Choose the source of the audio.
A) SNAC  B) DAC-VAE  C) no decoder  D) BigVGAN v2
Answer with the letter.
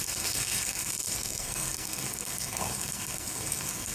A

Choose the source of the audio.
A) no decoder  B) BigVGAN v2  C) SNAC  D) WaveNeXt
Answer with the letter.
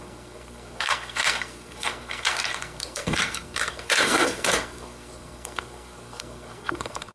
C